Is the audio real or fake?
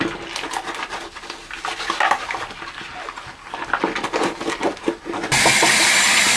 real